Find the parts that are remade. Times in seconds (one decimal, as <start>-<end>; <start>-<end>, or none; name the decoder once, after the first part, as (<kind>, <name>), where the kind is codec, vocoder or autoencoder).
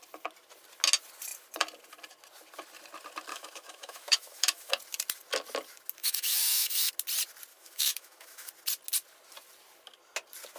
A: 3.3-4.7 (autoencoder, DAC-VAE); 6.0-6.9; 7.5-8.5